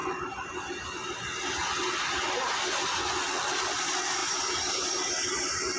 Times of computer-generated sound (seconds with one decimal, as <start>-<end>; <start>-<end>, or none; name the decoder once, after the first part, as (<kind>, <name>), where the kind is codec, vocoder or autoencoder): none